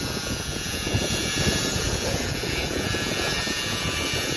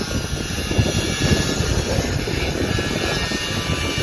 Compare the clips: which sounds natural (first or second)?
second